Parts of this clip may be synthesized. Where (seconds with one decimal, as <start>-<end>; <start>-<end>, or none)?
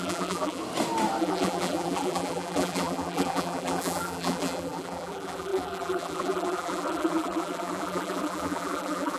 0.0-0.6; 1.2-9.2